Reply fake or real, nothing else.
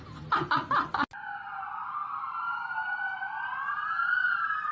real